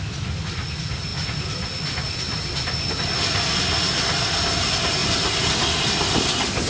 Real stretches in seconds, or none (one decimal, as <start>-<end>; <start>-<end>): 0.0-6.7